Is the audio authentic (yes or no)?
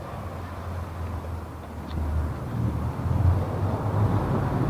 yes